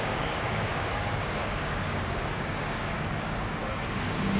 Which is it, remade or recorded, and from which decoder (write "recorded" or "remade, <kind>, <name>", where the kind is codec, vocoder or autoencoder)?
remade, codec, DAC